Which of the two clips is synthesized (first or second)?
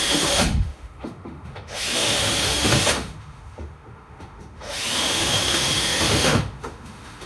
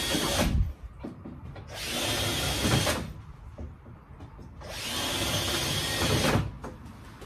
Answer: first